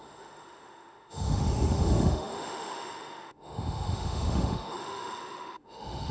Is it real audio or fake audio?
fake